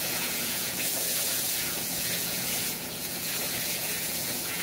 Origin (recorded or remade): remade